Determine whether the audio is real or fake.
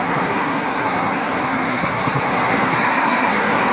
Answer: fake